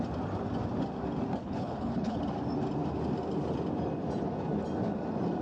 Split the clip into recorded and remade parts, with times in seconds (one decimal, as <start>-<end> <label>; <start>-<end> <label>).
0.0-1.4 recorded; 1.4-2.2 remade; 2.2-5.4 recorded